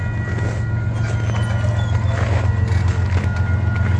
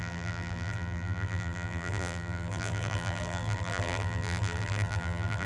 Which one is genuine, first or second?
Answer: first